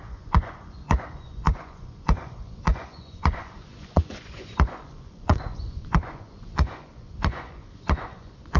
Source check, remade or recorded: remade